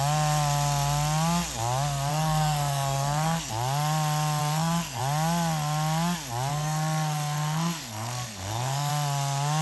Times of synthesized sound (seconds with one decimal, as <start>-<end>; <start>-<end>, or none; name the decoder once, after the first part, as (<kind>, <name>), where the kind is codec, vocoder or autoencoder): 2.1-3.5 (codec, SNAC); 4.4-5.0; 6.5-8.9